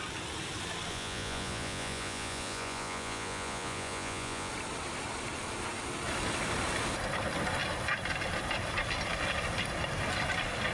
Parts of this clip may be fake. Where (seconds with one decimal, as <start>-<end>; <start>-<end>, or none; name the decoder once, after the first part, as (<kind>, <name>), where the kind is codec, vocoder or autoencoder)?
0.9-4.5 (vocoder, Vocos)